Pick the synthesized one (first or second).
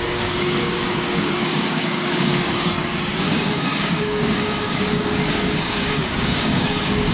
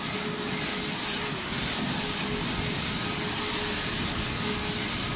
first